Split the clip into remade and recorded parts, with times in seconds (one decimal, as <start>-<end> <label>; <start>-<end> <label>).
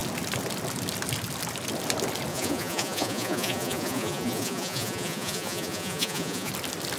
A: 0.0-2.3 recorded; 2.3-6.5 remade; 6.5-7.0 recorded